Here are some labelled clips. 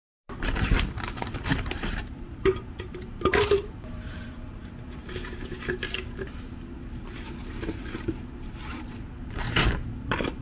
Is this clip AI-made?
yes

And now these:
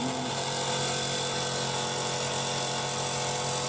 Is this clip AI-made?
no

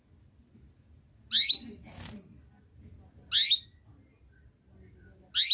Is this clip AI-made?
no